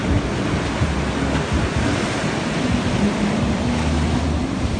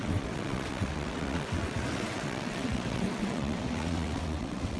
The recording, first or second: first